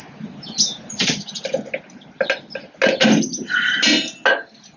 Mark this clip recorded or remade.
recorded